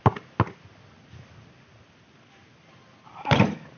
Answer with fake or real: real